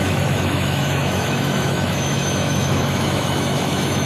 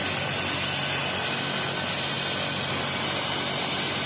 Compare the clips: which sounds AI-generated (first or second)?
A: first